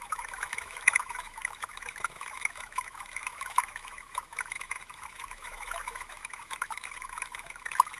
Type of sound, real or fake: fake